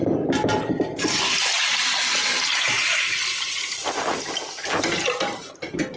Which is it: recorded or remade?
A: recorded